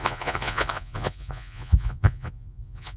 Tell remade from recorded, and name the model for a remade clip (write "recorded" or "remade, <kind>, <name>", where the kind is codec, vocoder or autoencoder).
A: remade, vocoder, Vocos